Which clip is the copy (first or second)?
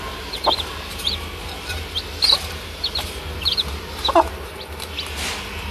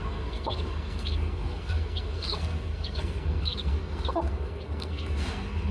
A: second